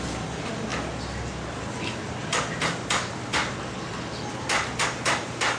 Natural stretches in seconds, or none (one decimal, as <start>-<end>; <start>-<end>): 0.0-5.6